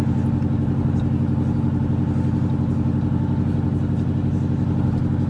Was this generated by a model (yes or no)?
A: no